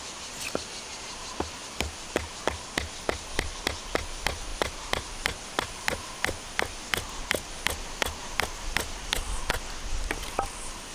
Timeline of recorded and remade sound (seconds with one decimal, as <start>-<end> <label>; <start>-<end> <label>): 0.0-1.6 recorded; 1.6-2.4 remade; 2.4-4.5 recorded; 4.5-5.8 remade; 5.8-8.2 recorded; 8.2-9.0 remade; 9.0-10.9 recorded